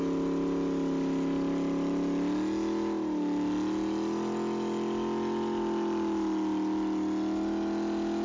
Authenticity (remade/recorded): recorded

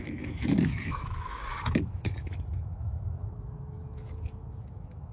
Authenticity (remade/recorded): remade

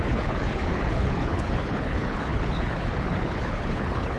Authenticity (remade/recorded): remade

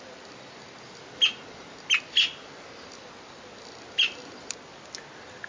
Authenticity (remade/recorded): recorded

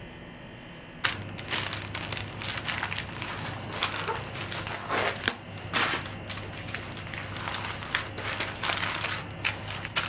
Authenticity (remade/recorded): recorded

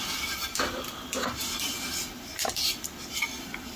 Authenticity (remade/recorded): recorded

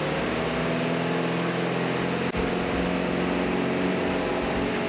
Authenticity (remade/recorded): recorded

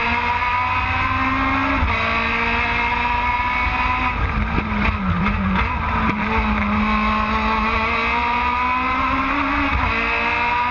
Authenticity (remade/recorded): recorded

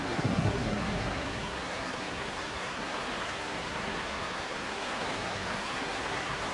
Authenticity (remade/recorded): remade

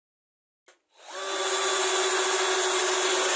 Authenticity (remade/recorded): recorded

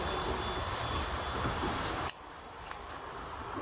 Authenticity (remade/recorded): recorded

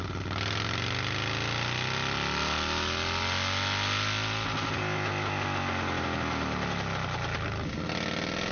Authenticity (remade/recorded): recorded